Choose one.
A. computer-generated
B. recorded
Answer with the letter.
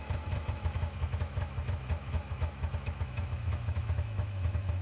A